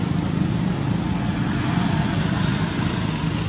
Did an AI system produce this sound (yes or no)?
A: no